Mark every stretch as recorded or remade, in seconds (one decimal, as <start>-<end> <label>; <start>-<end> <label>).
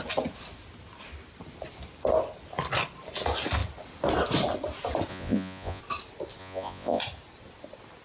0.0-5.1 recorded; 5.1-5.8 remade; 5.8-6.4 recorded; 6.4-7.0 remade; 7.0-8.0 recorded